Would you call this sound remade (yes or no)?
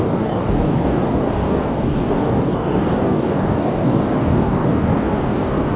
yes